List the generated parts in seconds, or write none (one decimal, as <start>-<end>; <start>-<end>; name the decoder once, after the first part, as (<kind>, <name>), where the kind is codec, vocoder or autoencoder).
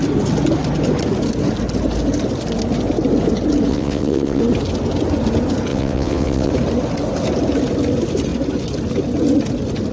3.7-4.4 (vocoder, WaveNeXt); 5.7-6.5